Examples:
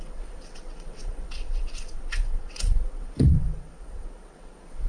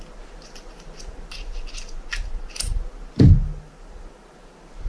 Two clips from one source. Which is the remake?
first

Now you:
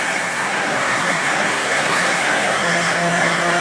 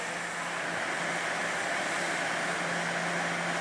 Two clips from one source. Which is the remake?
first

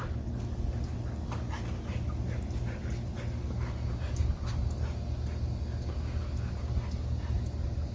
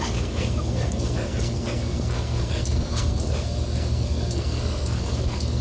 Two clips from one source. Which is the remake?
second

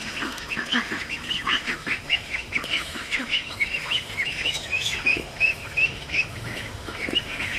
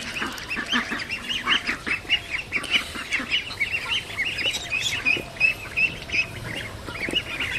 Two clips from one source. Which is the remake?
first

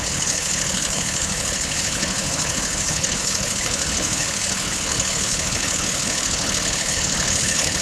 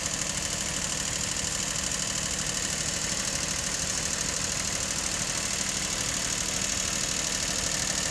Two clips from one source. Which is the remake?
first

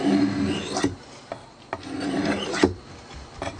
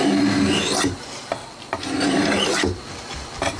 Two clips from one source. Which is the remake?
second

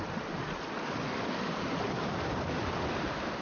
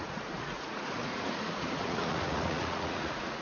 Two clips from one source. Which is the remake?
second